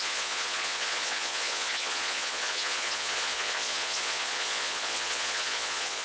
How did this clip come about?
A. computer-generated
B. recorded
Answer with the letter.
A